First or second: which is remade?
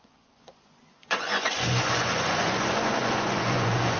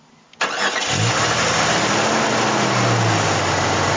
first